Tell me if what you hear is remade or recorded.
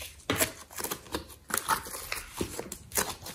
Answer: recorded